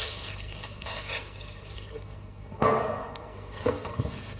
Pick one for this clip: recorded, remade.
remade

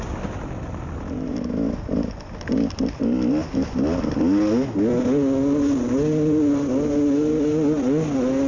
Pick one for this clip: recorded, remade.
recorded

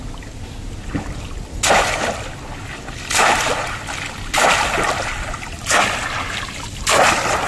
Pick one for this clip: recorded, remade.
recorded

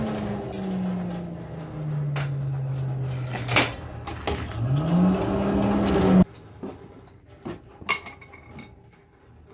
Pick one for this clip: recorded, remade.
recorded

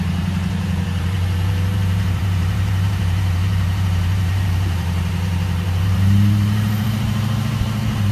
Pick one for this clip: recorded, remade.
remade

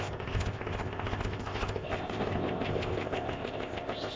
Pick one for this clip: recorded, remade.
remade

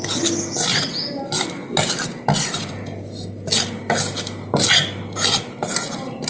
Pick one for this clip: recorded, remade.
recorded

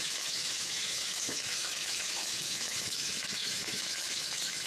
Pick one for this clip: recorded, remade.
remade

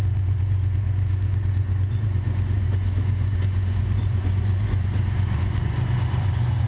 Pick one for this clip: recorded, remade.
remade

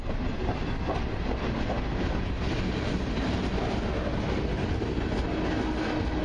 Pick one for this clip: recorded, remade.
recorded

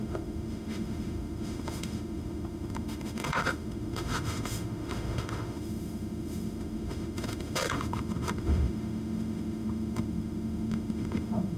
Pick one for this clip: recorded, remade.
remade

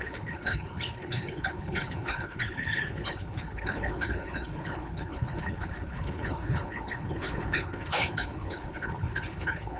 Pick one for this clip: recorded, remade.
remade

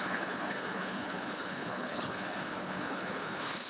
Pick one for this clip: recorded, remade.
remade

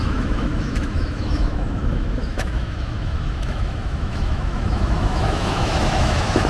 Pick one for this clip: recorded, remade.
remade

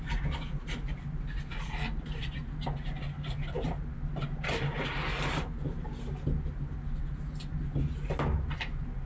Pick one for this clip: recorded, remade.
recorded